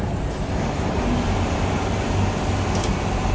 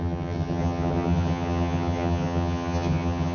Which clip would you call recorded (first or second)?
first